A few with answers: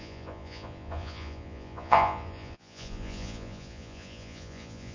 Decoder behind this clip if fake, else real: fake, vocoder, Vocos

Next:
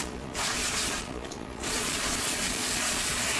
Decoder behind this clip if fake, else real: fake, vocoder, Vocos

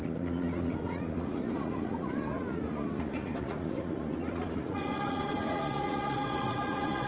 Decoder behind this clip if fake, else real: fake, vocoder, Vocos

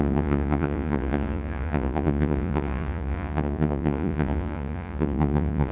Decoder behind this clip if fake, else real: fake, vocoder, Vocos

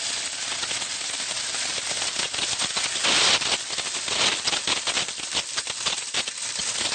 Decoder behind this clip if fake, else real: real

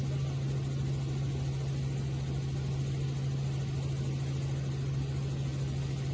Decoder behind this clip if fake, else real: real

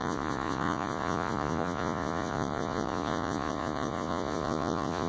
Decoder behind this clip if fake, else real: fake, vocoder, Vocos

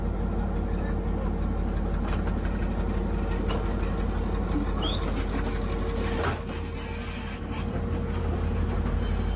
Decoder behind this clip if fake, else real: real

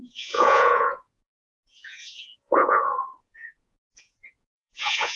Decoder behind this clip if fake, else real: fake, vocoder, Vocos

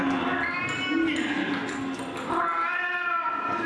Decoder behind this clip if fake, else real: real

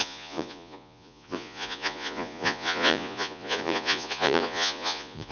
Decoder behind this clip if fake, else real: fake, vocoder, Vocos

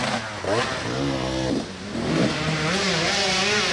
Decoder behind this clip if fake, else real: real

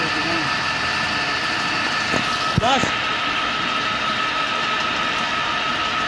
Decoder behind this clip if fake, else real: real